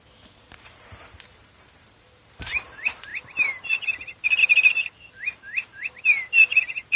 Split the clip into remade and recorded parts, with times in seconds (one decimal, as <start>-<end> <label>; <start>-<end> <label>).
0.0-7.0 remade